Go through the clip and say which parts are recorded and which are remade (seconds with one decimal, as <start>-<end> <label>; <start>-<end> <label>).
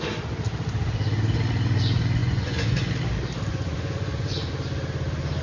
0.0-2.2 recorded; 2.2-2.9 remade; 2.9-3.5 recorded; 3.5-4.5 remade; 4.5-5.4 recorded